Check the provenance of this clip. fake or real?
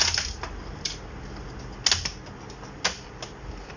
real